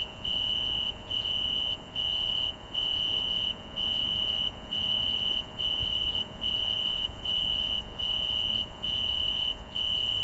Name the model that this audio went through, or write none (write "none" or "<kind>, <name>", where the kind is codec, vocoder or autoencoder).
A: vocoder, Vocos